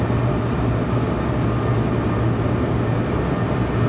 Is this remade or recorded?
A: recorded